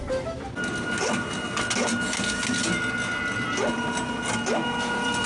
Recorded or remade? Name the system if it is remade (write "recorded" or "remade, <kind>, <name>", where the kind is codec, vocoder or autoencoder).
recorded